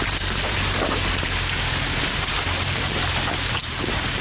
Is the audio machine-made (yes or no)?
yes